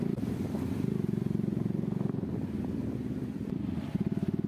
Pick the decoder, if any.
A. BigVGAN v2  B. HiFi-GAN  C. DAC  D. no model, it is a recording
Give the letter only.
D